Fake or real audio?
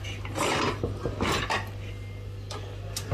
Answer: real